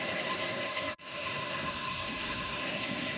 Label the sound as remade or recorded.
remade